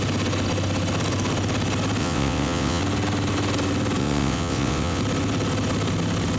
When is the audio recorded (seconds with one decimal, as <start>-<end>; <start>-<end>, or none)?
0.0-2.0; 2.8-4.0; 5.0-6.4